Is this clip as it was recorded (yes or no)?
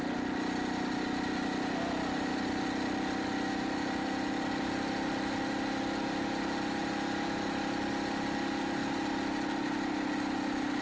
yes